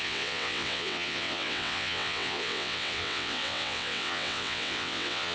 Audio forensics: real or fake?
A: fake